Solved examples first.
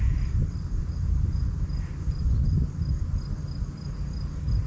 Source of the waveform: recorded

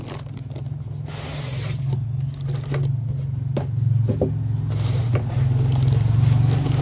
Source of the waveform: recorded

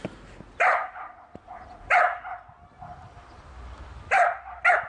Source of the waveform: recorded